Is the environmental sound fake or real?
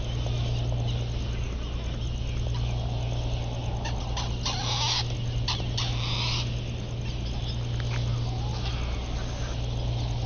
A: real